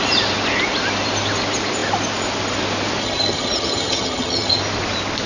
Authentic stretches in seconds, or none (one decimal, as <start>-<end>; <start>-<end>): 0.0-3.0; 4.6-5.3